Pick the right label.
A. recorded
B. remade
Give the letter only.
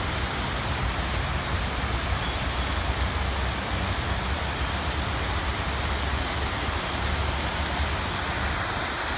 A